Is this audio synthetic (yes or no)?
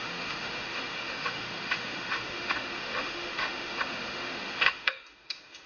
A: yes